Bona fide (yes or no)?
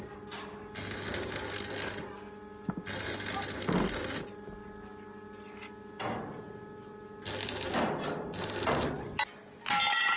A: yes